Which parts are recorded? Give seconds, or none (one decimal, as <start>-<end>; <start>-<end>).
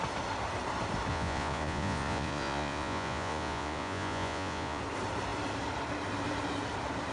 0.0-1.1; 4.8-7.1